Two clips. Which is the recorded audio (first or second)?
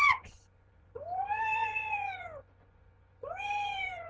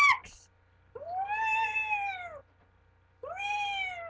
second